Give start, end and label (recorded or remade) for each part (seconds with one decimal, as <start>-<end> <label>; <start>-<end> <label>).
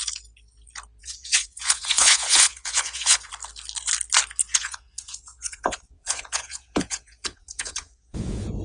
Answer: 0.0-1.0 recorded; 1.0-3.3 remade; 3.3-4.4 recorded; 4.4-8.6 remade